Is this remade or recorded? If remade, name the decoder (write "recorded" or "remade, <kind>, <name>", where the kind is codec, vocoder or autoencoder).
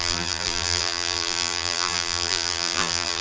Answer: remade, vocoder, BigVGAN v2